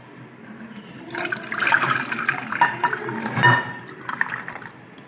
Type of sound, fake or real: real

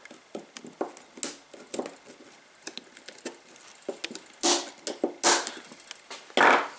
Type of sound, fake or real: real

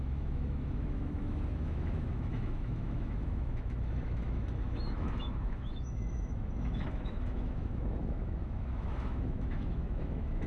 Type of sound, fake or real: fake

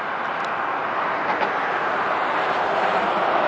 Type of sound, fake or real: real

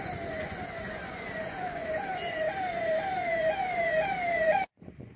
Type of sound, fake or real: fake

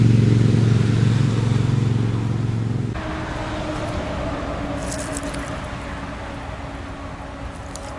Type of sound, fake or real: real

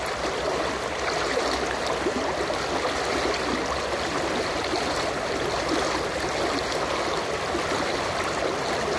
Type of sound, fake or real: real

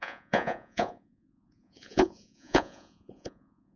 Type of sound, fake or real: fake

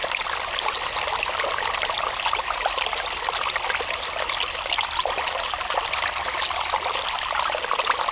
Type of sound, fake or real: real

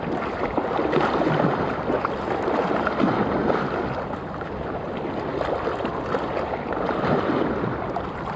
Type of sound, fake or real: real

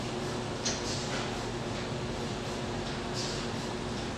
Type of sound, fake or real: real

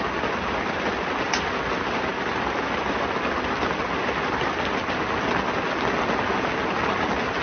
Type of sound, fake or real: real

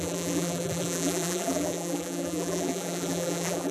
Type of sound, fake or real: fake